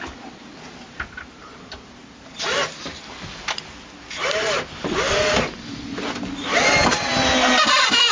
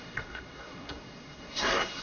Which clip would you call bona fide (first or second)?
first